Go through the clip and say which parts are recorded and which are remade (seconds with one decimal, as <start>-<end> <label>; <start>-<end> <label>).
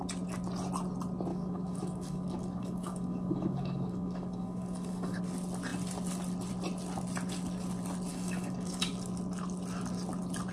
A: 0.0-1.3 recorded; 1.3-5.2 remade; 5.2-8.1 recorded; 8.1-8.9 remade; 8.9-10.5 recorded